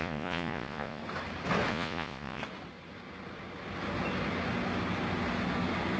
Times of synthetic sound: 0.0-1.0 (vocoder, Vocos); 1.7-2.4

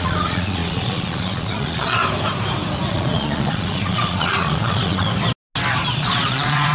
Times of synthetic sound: 0.0-2.0 (vocoder, Vocos); 2.9-5.1; 6.0-6.7

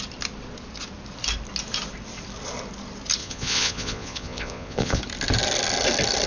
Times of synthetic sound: 3.2-5.0 (vocoder, Vocos)

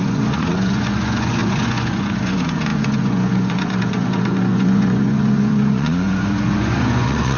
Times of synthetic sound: 0.0-7.4 (vocoder, Vocos)

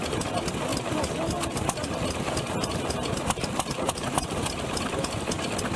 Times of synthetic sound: none

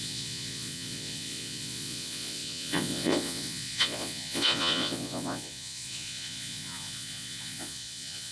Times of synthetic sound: 0.0-8.3 (vocoder, Vocos)

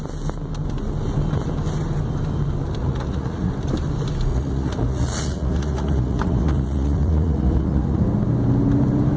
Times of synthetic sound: 2.8-3.5 (vocoder, Vocos); 4.3-8.0